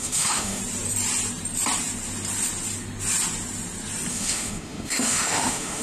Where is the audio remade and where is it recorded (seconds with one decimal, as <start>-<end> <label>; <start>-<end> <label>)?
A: 0.0-0.6 remade; 0.6-4.1 recorded; 4.1-5.8 remade